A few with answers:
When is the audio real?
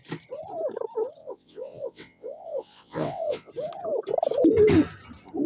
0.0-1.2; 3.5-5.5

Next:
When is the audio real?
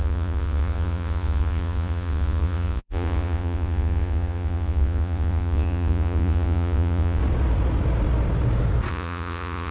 7.2-8.9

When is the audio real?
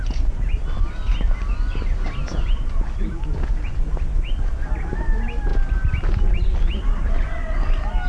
0.0-8.1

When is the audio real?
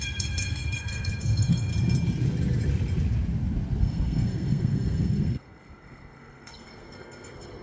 1.7-3.8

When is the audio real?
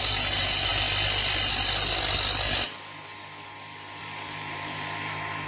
0.7-4.0